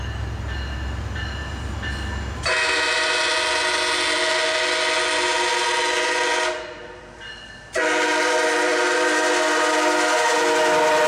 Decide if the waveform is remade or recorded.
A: recorded